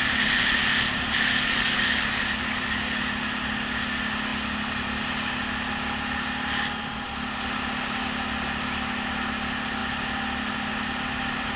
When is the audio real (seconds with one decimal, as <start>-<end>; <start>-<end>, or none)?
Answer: 0.0-1.3; 3.0-11.6